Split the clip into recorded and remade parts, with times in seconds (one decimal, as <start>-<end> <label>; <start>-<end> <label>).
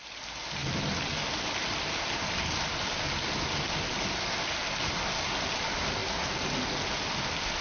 0.0-7.6 recorded